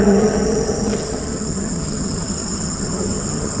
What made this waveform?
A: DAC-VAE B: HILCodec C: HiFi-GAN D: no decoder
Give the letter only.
C